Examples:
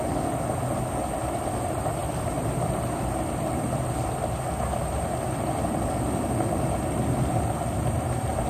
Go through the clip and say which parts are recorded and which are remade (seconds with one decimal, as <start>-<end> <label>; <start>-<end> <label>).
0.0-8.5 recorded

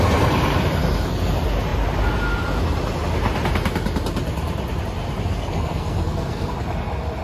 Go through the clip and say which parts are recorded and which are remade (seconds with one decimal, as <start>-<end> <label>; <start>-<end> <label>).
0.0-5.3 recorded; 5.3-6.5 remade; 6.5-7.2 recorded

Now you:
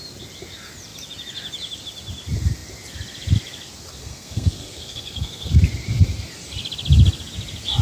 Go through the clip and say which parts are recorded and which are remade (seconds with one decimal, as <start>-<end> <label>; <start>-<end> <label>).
0.0-4.0 recorded; 4.0-5.5 remade; 5.5-7.8 recorded

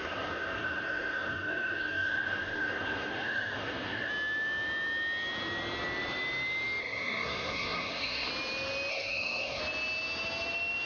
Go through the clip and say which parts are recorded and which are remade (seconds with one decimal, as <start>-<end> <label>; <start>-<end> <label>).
0.0-4.1 remade; 4.1-6.8 recorded; 6.8-8.3 remade; 8.3-8.9 recorded; 8.9-9.6 remade; 9.6-10.9 recorded